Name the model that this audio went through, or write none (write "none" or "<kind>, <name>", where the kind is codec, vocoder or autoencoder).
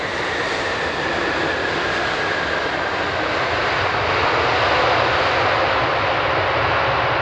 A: none